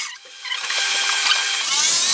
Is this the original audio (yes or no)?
yes